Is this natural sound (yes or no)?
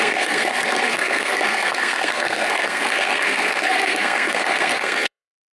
no